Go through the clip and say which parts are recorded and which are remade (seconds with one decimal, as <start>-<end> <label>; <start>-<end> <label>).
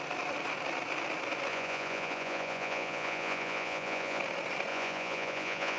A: 0.0-1.5 recorded; 1.5-4.2 remade; 4.2-4.7 recorded; 4.7-5.8 remade